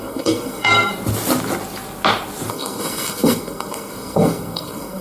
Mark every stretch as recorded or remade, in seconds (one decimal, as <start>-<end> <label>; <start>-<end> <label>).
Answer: 0.0-0.9 remade; 0.9-2.5 recorded; 2.5-5.0 remade